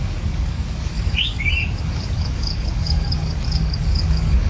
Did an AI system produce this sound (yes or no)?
yes